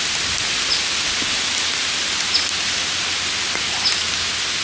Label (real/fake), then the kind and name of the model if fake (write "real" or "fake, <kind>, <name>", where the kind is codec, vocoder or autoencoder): real